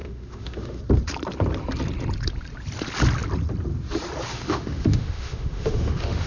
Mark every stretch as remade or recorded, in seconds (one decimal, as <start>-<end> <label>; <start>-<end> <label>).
0.0-0.8 remade; 0.8-4.3 recorded; 4.3-6.3 remade